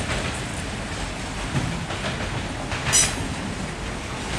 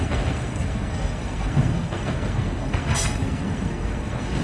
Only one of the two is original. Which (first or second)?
first